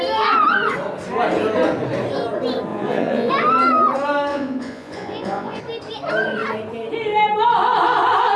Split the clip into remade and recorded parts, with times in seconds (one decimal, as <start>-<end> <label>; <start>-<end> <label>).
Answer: 0.0-2.7 recorded; 2.7-3.3 remade; 3.3-4.3 recorded; 4.3-5.6 remade; 5.6-8.4 recorded